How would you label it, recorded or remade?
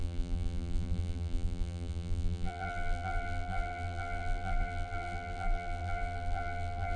remade